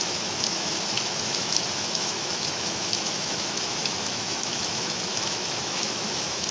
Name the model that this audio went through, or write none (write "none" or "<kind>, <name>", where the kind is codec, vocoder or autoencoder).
autoencoder, DAC-VAE